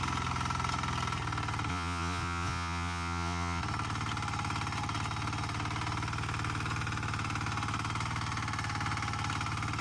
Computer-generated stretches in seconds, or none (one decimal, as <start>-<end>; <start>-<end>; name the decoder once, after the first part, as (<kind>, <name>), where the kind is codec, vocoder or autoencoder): 1.7-3.6 (vocoder, Vocos)